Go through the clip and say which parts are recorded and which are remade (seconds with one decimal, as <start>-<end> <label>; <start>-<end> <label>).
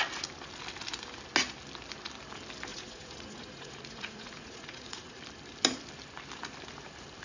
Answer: 0.0-2.7 recorded; 2.7-5.2 remade; 5.2-7.2 recorded